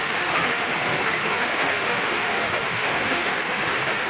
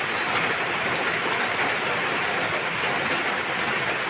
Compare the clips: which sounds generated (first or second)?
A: first